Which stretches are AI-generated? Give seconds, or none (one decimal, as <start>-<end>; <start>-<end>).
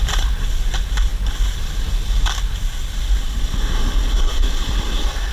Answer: none